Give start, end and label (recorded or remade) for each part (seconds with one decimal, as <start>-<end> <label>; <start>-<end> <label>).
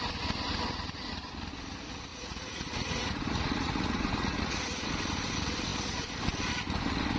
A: 0.0-2.1 recorded; 2.1-4.9 remade; 4.9-7.2 recorded